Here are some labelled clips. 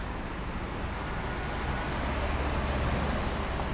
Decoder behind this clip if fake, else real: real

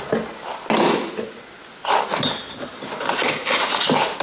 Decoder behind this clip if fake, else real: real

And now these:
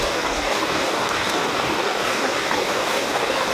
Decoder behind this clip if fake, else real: fake, codec, DAC